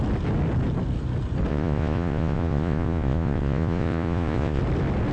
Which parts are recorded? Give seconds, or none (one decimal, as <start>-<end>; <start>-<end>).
0.0-1.5; 4.6-5.1